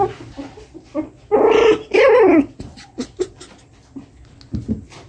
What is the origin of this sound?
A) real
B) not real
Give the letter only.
A